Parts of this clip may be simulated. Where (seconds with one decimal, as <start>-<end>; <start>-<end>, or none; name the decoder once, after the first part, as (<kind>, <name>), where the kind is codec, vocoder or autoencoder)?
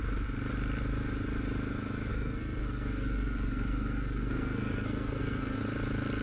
2.1-5.6 (codec, SNAC)